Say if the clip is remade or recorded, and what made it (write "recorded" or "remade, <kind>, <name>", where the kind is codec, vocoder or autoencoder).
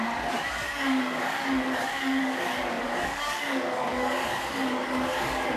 remade, codec, DAC